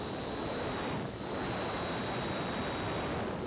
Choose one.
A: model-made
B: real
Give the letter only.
B